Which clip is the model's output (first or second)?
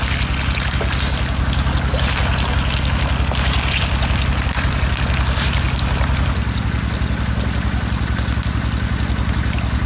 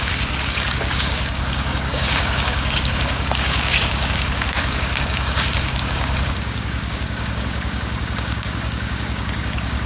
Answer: second